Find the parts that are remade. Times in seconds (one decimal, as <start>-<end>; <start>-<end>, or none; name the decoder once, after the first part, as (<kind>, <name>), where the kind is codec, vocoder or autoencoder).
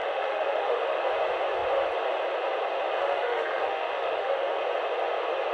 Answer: 0.0-1.0 (autoencoder, DAC-VAE); 3.0-4.6